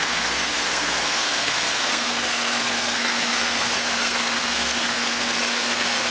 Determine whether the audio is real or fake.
fake